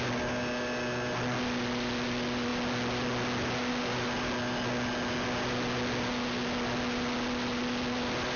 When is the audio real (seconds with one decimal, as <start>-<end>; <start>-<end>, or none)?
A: 0.0-8.4